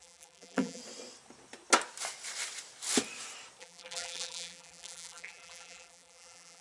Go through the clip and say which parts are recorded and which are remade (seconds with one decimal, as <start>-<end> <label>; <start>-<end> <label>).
0.0-0.8 remade; 0.8-3.6 recorded; 3.6-6.6 remade